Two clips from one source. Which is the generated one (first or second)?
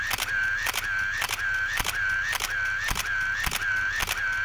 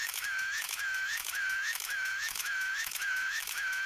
second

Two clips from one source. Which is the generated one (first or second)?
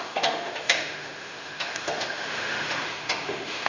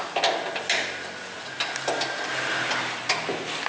first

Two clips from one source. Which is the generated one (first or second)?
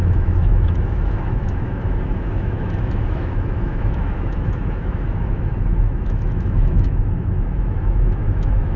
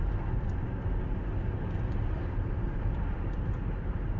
first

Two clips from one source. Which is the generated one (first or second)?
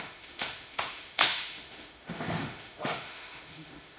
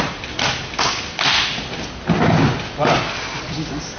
first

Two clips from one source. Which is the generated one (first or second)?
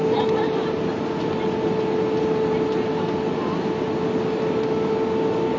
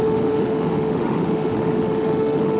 second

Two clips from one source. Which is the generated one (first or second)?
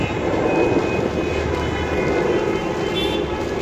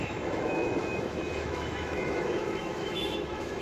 second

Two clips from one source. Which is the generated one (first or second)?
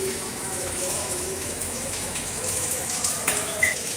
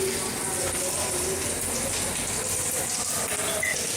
first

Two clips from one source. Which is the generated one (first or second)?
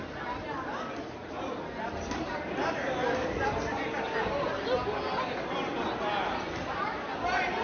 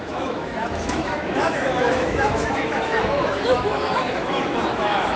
second